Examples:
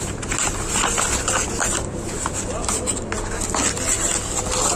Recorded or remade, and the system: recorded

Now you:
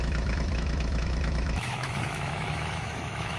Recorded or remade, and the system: remade, autoencoder, DAC-VAE